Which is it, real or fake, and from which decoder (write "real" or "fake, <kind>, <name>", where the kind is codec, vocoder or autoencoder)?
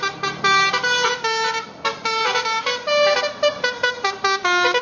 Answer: real